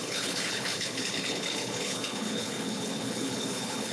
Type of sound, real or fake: fake